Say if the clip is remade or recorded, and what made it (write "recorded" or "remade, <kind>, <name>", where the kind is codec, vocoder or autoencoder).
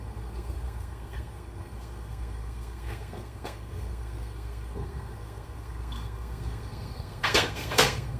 remade, codec, SNAC